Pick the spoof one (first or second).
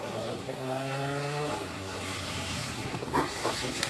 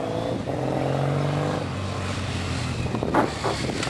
first